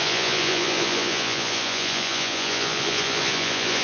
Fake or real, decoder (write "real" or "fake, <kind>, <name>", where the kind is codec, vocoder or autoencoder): fake, vocoder, Vocos